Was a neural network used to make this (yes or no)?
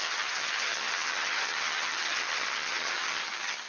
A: yes